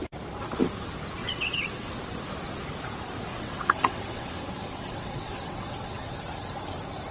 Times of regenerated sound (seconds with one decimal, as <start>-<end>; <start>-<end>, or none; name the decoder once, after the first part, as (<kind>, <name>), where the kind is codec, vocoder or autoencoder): 1.2-1.9 (vocoder, WaveNeXt); 3.3-6.1